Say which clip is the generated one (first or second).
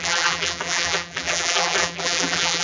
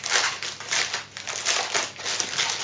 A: first